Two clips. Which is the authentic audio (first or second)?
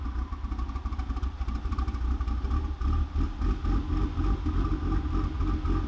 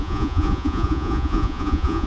first